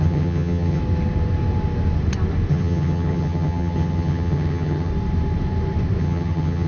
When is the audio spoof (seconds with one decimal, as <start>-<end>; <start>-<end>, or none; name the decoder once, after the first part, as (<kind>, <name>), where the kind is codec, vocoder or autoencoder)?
0.0-0.8 (vocoder, HiFi-GAN); 2.5-4.9; 6.0-6.7